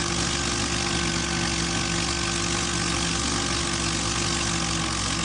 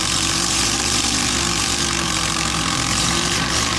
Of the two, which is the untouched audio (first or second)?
first